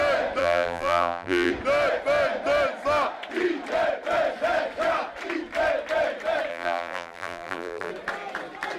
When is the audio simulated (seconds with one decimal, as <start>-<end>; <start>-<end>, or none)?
0.4-1.5; 6.5-7.9